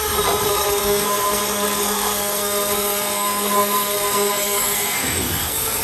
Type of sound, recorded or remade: remade